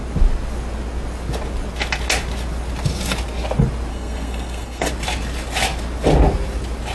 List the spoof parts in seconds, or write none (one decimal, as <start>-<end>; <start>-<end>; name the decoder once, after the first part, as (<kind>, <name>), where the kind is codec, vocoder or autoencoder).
3.9-4.9 (codec, SNAC)